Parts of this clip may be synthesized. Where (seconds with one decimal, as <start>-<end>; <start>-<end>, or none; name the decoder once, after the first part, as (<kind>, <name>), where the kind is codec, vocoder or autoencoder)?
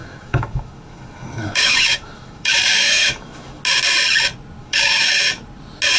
0.0-3.6 (autoencoder, DAC-VAE); 4.6-5.1